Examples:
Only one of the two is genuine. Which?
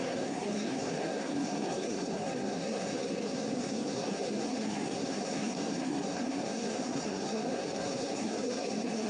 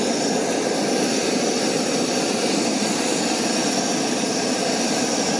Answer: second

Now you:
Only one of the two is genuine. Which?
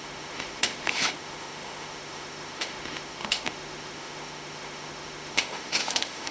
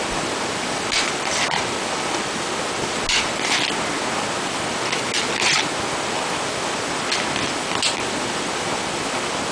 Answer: second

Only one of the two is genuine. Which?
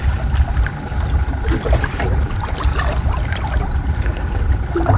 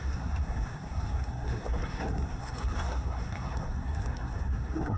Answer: first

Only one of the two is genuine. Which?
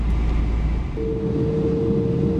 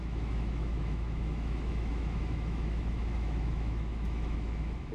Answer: first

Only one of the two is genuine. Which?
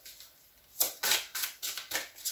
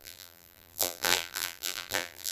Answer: first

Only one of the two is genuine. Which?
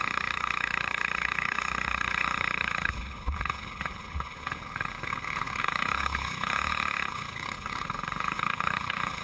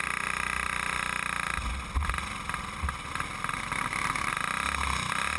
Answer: second